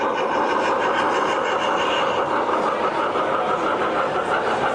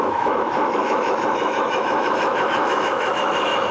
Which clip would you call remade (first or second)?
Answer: second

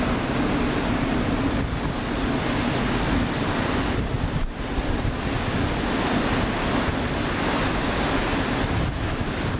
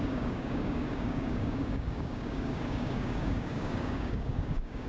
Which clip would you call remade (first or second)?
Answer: second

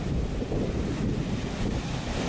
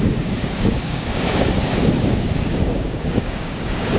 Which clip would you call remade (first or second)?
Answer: second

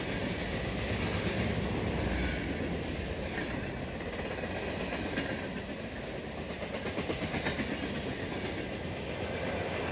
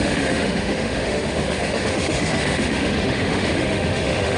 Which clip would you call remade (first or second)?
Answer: second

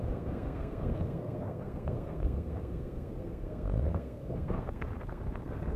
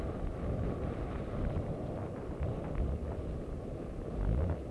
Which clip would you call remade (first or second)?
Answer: first